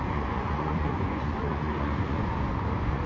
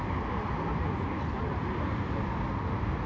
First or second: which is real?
second